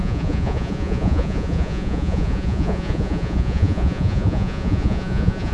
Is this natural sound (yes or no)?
no